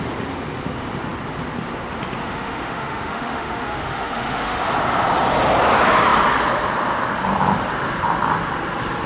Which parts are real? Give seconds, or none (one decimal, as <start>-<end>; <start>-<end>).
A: 0.0-2.2; 4.7-9.1

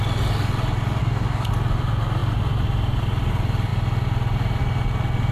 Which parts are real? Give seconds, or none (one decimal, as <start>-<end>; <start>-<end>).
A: 0.0-1.0; 1.5-5.3

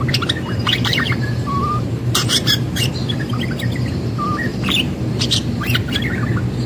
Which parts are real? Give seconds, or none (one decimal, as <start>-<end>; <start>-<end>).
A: 0.0-0.6; 2.9-4.5; 6.0-6.7

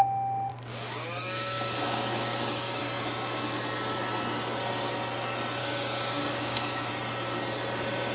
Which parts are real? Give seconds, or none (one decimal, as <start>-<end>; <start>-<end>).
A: 0.0-0.5; 2.8-5.6; 6.9-8.1

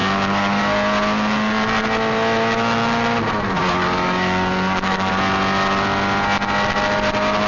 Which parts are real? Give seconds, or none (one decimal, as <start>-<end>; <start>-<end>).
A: 0.6-3.6; 5.1-7.5

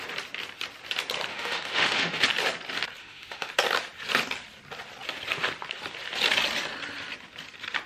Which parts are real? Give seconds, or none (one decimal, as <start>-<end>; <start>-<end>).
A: 0.0-1.3; 2.2-3.0; 3.5-7.9